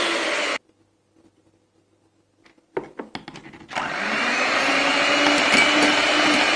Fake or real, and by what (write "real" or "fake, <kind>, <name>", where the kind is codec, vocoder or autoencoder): real